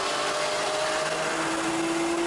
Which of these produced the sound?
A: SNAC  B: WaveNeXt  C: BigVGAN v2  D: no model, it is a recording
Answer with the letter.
D